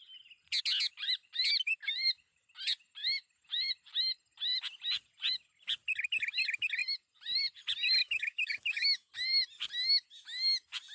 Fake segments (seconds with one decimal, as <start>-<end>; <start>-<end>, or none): 8.0-9.1